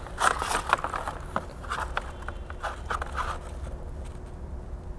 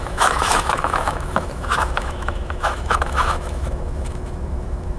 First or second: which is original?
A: first